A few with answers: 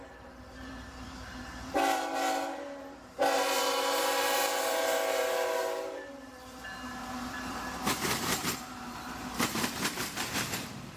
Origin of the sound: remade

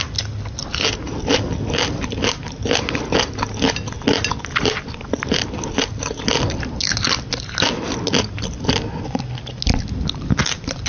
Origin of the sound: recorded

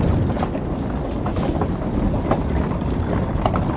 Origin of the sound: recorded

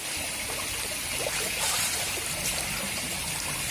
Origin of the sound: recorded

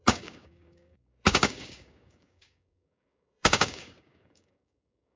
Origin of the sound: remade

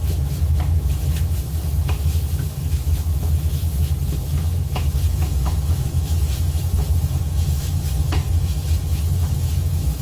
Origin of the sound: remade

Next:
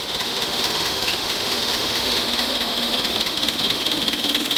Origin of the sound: remade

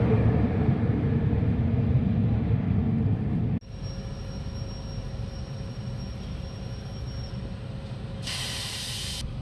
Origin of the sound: recorded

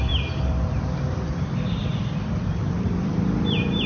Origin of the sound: remade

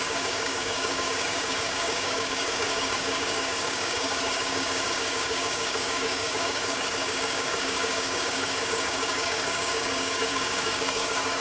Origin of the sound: remade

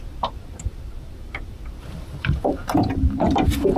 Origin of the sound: remade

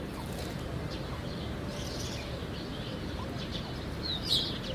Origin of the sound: remade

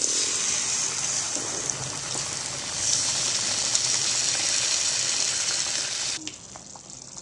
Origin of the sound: recorded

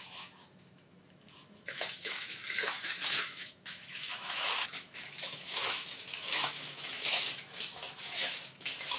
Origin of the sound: remade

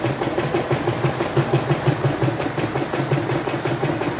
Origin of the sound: recorded